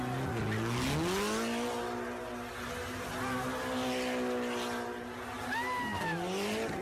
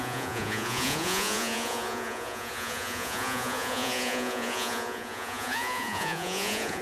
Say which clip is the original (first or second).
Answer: first